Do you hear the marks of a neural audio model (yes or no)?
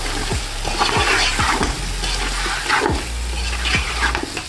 no